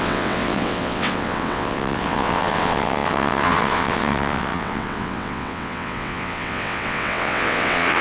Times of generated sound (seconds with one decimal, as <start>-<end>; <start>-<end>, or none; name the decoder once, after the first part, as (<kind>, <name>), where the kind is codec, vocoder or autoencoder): 0.0-8.0 (vocoder, WaveNeXt)